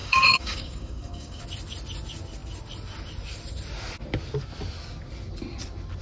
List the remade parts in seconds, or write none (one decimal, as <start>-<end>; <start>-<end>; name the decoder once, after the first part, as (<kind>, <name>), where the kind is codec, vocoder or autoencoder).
0.0-1.4 (codec, DAC)